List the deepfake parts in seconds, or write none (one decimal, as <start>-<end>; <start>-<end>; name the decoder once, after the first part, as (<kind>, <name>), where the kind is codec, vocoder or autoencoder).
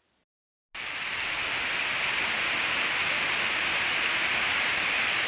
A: none